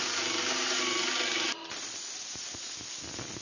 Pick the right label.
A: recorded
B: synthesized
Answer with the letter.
A